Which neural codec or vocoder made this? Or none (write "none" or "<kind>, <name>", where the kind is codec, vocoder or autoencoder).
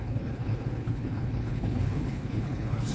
codec, HILCodec